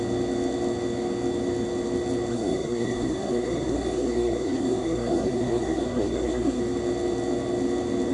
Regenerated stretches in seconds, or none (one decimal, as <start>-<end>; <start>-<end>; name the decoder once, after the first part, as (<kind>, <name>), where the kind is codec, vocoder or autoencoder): 2.3-6.6 (codec, SNAC)

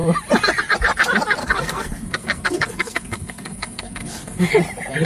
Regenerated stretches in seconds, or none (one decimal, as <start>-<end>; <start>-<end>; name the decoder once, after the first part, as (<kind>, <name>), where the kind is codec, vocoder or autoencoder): 1.4-4.5 (codec, SNAC)

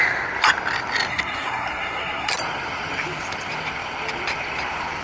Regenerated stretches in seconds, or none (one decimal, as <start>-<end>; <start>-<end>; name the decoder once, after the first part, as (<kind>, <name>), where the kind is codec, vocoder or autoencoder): 1.1-2.3 (codec, SNAC)

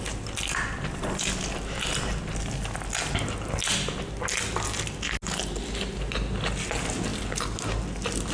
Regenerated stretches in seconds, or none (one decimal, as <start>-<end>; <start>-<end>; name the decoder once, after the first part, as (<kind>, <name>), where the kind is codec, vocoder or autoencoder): none

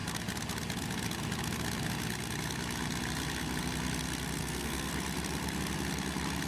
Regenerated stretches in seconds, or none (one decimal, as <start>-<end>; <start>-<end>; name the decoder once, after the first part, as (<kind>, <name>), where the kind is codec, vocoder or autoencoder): 4.4-4.9 (codec, SNAC)